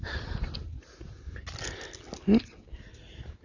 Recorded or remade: recorded